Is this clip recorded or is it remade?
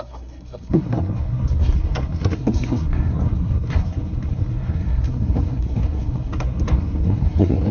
remade